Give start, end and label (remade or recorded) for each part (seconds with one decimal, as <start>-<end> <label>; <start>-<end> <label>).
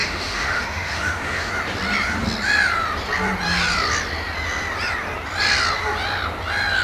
0.0-1.5 remade; 1.5-6.8 recorded